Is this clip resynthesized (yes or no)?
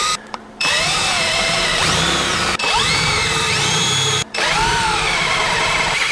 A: yes